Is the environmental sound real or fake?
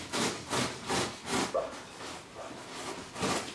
real